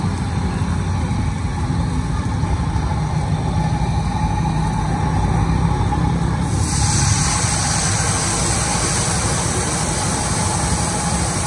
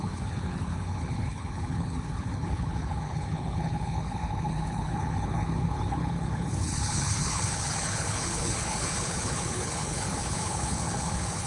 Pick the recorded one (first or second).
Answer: first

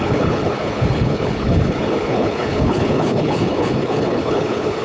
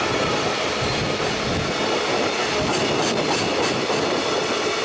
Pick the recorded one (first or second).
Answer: second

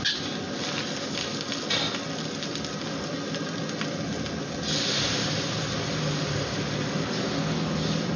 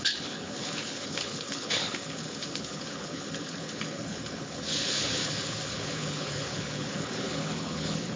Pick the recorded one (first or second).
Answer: first